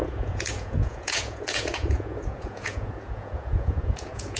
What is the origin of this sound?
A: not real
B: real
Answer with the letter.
A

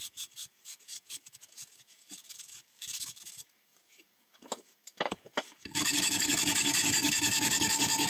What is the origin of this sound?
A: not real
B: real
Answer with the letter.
A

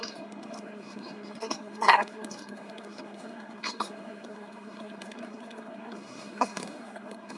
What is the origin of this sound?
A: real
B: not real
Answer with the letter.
B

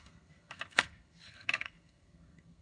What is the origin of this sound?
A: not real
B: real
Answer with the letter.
A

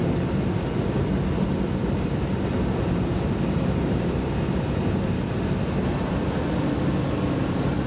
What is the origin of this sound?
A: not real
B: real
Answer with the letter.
B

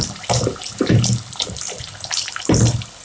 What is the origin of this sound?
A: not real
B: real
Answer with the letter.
A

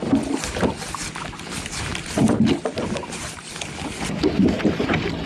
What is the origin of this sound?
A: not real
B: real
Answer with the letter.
B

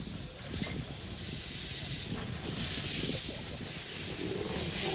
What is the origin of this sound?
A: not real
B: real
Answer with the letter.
B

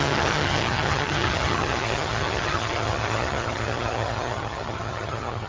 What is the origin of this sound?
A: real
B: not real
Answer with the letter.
B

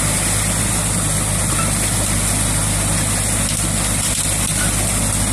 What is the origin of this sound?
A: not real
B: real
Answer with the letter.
B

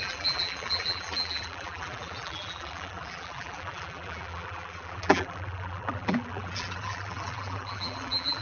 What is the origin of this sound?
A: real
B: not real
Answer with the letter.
B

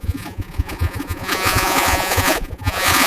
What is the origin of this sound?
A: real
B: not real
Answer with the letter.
B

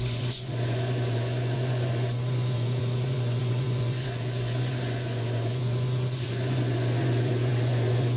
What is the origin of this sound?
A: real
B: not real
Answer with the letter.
B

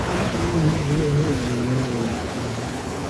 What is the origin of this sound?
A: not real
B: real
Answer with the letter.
A